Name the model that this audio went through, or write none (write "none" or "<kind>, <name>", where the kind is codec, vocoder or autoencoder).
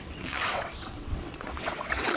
vocoder, WaveNeXt